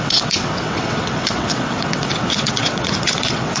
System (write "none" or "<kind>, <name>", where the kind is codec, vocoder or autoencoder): vocoder, WaveNeXt